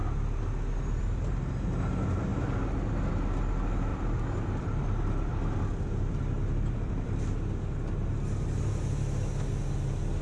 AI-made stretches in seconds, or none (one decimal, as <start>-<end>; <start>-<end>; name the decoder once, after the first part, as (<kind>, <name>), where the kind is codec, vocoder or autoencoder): 3.9-7.1 (vocoder, BigVGAN v2)